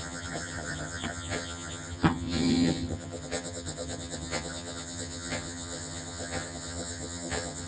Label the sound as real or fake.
fake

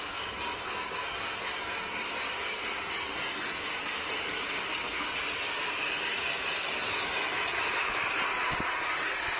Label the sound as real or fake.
real